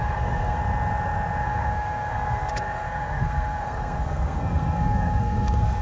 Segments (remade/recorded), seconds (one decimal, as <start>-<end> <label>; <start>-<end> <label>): 0.0-0.6 remade; 0.6-1.4 recorded; 1.4-5.8 remade

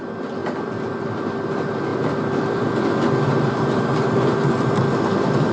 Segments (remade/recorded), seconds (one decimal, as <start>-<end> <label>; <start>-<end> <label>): 0.0-5.5 remade

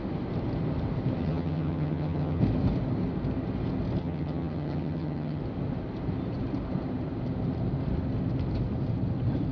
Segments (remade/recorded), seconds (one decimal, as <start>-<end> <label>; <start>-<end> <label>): 0.0-1.2 recorded; 1.2-2.4 remade; 2.4-4.0 recorded; 4.0-5.4 remade; 5.4-9.5 recorded

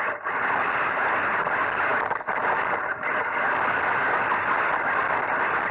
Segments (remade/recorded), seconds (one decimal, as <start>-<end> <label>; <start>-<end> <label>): 0.0-5.7 recorded

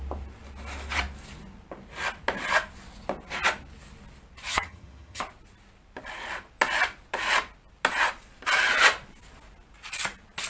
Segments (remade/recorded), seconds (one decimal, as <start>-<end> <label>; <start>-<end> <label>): 0.0-4.5 recorded; 4.5-5.2 remade; 5.2-10.5 recorded